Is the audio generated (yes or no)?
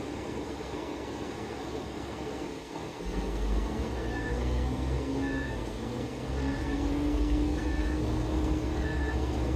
yes